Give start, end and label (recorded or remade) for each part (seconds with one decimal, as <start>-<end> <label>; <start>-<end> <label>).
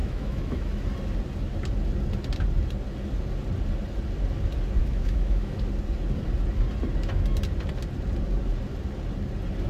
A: 0.0-0.8 remade; 0.8-4.8 recorded; 4.8-5.6 remade; 5.6-9.7 recorded